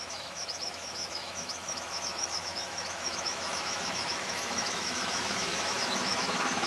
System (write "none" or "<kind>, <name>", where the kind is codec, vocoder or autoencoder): autoencoder, DAC-VAE